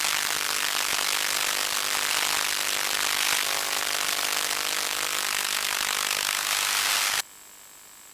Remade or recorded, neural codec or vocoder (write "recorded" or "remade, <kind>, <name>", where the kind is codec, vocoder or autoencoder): recorded